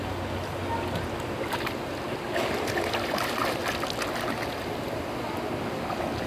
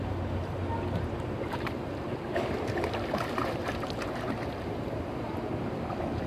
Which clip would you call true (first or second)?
first